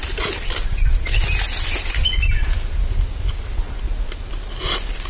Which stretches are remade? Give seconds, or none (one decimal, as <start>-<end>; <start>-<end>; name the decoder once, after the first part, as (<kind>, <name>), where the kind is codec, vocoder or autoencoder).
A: none